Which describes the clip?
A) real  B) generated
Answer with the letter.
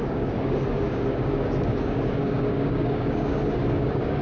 B